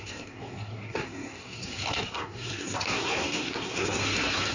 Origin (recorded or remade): remade